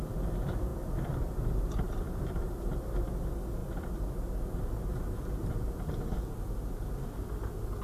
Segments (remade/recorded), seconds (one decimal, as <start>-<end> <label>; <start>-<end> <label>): 0.0-0.7 recorded; 0.7-2.6 remade; 2.6-3.6 recorded; 3.6-4.7 remade; 4.7-7.8 recorded